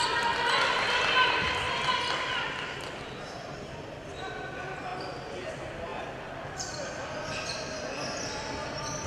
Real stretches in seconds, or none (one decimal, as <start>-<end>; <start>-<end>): 0.0-9.1